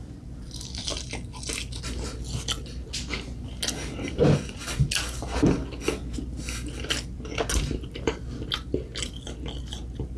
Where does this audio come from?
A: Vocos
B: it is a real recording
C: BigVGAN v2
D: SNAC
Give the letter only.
B